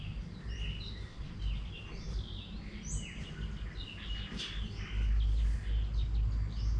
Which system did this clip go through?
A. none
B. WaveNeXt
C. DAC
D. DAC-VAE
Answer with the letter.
A